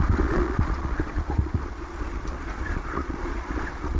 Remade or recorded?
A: remade